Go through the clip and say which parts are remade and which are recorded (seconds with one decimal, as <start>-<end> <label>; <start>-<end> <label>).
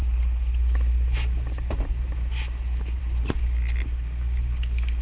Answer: 0.0-5.0 recorded